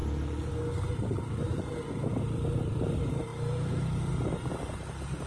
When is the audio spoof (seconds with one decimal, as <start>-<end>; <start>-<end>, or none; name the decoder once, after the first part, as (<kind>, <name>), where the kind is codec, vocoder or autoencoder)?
0.9-1.7 (vocoder, BigVGAN v2); 2.6-5.3